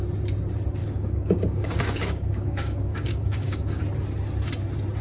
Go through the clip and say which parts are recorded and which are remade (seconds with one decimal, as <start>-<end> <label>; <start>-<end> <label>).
0.0-0.8 recorded; 0.8-3.8 remade; 3.8-5.0 recorded